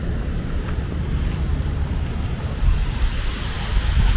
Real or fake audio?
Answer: real